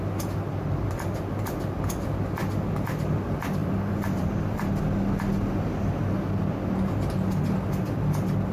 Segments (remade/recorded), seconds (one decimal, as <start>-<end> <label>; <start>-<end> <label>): 0.0-3.6 recorded; 3.6-4.8 remade; 4.8-8.5 recorded